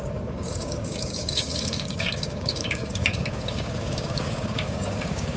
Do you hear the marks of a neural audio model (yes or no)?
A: yes